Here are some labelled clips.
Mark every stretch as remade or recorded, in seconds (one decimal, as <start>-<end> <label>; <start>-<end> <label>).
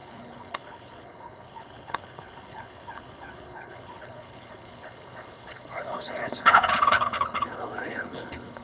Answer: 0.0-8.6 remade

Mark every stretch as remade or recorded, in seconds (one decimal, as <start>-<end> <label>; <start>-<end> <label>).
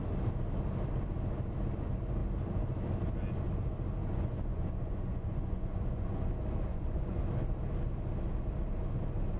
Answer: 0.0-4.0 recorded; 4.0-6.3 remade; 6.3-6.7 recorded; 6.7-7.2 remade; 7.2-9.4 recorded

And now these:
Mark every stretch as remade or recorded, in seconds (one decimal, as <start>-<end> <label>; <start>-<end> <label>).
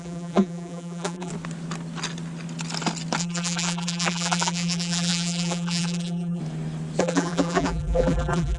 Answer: 0.0-1.3 remade; 1.3-3.2 recorded; 3.2-6.4 remade; 6.4-7.0 recorded; 7.0-8.6 remade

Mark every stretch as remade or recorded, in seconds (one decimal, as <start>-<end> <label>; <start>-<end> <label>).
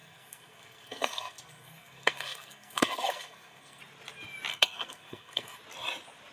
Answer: 0.0-3.8 remade; 3.8-4.5 recorded; 4.5-5.6 remade; 5.6-6.3 recorded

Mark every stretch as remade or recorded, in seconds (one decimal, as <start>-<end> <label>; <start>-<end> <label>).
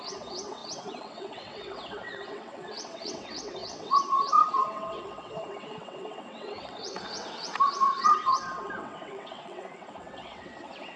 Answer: 0.0-11.0 remade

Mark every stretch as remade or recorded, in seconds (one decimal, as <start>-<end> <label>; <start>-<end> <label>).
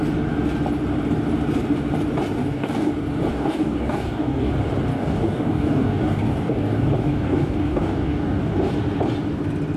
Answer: 0.0-2.4 recorded; 2.4-2.9 remade; 2.9-3.3 recorded; 3.3-4.5 remade; 4.5-4.9 recorded; 4.9-8.7 remade; 8.7-9.8 recorded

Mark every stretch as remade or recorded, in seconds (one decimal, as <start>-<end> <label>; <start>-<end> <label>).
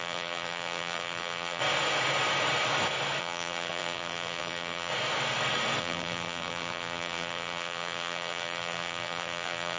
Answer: 0.0-1.6 remade; 1.6-3.2 recorded; 3.2-4.9 remade; 4.9-5.8 recorded; 5.8-9.8 remade